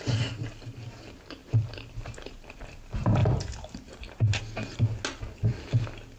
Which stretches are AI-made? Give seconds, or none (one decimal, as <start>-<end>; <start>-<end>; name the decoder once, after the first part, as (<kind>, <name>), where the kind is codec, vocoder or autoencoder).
1.4-2.6 (vocoder, BigVGAN v2); 3.2-4.4